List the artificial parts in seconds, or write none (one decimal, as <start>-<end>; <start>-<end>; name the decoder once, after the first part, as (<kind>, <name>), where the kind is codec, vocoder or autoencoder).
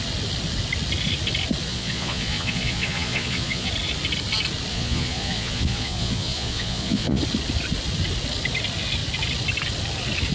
1.7-3.7 (vocoder, Vocos); 4.7-7.2